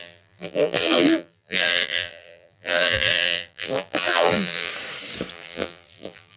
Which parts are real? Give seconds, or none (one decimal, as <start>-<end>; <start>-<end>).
4.7-5.3